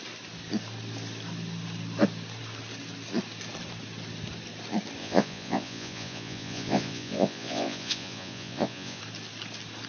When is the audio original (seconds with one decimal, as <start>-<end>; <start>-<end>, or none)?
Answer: 0.0-5.0; 9.0-9.9